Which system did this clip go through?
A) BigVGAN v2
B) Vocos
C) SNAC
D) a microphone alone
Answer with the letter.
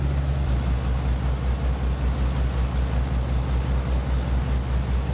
D